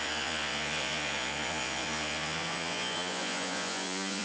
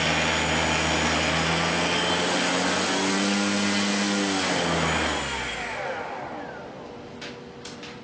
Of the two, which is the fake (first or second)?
first